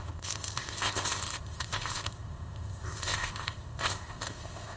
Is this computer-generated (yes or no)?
yes